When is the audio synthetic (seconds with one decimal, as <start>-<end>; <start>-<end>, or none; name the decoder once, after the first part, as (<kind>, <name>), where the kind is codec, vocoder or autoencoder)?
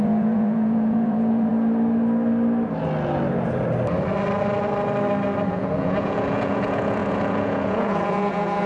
0.0-1.5 (vocoder, Vocos); 5.5-8.7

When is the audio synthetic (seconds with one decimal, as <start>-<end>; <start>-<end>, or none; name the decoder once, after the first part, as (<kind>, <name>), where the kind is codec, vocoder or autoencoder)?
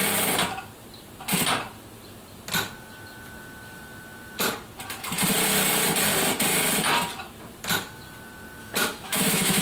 8.6-9.6 (autoencoder, DAC-VAE)